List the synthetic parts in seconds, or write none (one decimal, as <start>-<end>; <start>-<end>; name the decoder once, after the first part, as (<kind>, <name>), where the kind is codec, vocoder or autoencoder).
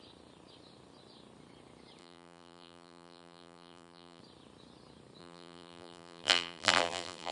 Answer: 2.0-4.2 (vocoder, BigVGAN v2); 5.2-7.3